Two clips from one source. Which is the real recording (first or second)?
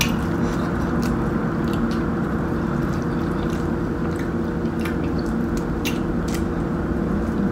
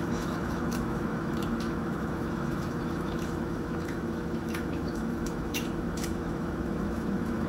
first